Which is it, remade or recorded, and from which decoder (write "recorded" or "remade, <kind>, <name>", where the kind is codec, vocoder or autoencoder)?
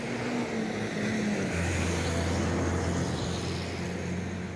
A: recorded